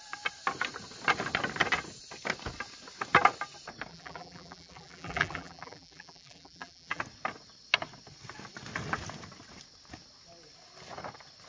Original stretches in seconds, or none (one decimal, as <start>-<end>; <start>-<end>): 0.0-3.9; 7.0-11.5